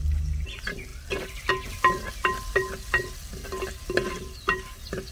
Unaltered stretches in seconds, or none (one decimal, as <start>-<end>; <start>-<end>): 0.0-5.1